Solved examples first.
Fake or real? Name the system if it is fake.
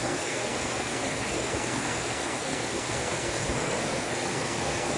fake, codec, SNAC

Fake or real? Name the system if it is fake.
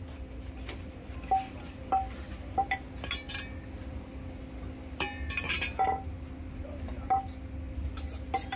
real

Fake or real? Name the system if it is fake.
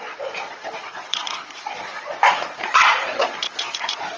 fake, vocoder, Vocos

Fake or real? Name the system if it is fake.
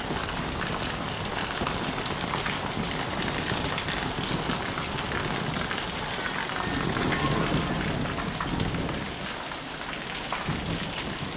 real